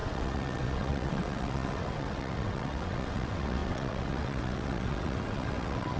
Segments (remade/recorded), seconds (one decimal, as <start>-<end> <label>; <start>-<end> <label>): 0.0-6.0 remade